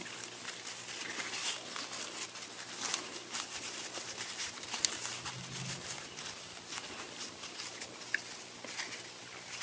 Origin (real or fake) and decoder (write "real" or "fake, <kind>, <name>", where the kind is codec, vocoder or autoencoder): real